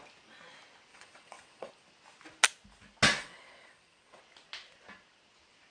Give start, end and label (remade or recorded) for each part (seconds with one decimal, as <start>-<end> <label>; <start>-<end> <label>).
0.0-0.9 recorded; 0.9-1.7 remade; 1.7-3.2 recorded; 3.2-4.2 remade; 4.2-5.7 recorded